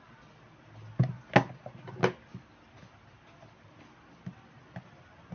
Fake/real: real